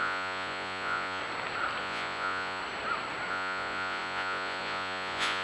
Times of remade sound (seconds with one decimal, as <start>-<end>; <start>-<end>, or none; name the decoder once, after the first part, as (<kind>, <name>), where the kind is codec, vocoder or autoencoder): 0.0-1.2 (vocoder, Vocos); 1.8-2.6; 3.3-5.4